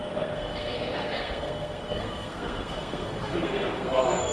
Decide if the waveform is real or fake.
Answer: fake